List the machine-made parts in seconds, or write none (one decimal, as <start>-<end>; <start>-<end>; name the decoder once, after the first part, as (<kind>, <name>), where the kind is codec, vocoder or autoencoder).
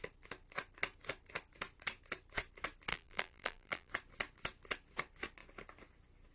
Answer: 2.9-3.9 (vocoder, BigVGAN v2)